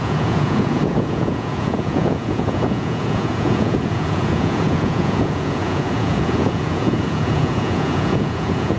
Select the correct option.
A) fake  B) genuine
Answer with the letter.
A